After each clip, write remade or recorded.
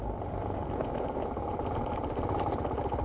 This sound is recorded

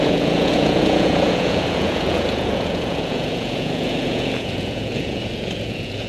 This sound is remade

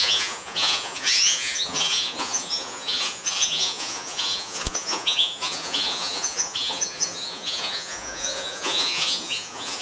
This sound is remade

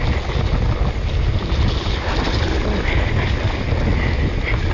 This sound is recorded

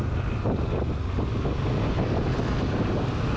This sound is recorded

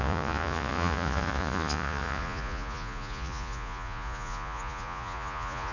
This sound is remade